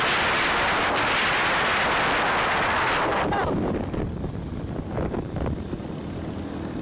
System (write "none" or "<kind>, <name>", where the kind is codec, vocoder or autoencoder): none